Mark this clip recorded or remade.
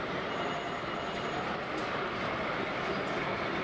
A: recorded